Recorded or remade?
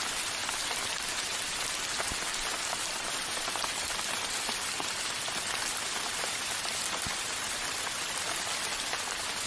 recorded